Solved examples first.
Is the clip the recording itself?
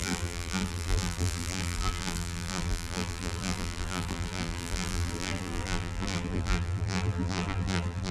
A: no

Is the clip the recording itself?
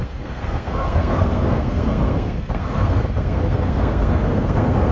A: no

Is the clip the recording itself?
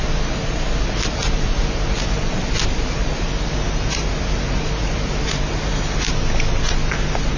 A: yes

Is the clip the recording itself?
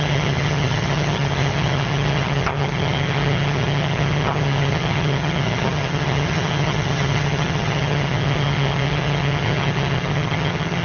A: no